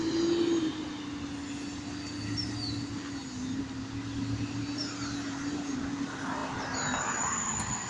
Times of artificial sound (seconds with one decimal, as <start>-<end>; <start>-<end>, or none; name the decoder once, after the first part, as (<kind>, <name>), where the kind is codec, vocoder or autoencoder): none